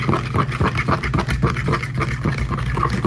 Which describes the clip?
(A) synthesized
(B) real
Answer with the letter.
B